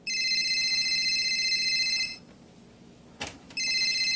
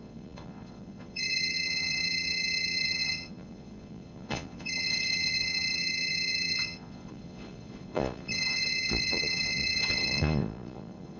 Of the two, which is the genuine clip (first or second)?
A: first